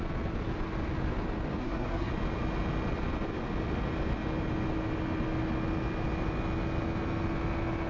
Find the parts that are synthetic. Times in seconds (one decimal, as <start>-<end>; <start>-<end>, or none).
1.6-2.1

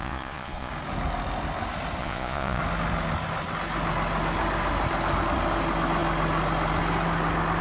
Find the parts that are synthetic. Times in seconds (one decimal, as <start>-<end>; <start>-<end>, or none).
0.0-0.7; 2.0-2.6

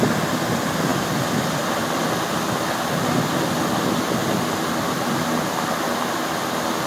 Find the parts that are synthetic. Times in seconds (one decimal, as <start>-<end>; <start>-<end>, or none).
none

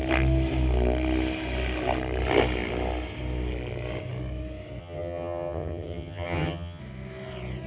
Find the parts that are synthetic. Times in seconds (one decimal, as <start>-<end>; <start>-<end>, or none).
4.8-6.8

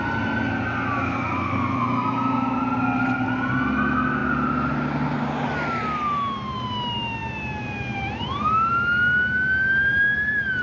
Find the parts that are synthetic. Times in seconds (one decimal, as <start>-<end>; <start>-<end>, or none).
none

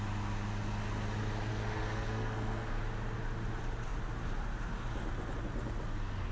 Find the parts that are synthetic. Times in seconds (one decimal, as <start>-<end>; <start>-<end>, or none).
1.5-2.8

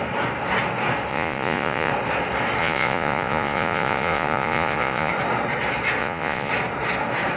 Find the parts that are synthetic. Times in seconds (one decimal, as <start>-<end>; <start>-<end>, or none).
1.1-1.9; 2.6-5.1; 6.0-6.5